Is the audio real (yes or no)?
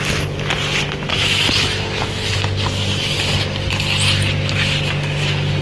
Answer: yes